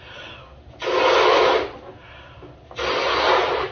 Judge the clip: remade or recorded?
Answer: recorded